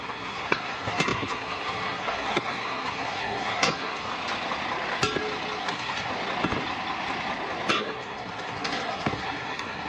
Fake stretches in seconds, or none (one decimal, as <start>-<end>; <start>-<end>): 0.0-4.1; 5.6-6.1; 7.7-9.9